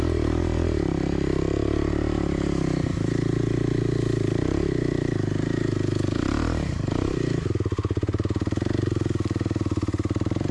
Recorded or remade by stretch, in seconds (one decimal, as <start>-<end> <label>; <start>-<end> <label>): 0.0-1.3 remade; 1.3-1.9 recorded; 1.9-10.5 remade